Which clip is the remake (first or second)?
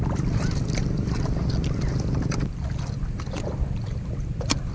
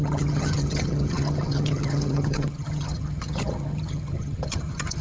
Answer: second